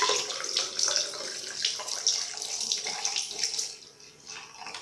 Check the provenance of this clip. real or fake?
real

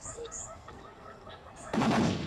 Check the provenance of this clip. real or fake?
fake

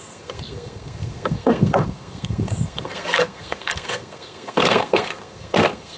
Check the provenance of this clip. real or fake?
fake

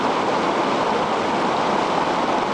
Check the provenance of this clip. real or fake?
real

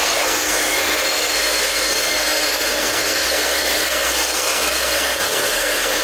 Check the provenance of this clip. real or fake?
fake